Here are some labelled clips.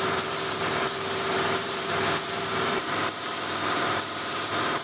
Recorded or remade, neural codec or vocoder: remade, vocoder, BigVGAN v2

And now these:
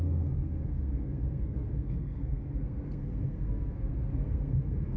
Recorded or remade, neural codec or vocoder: remade, codec, SNAC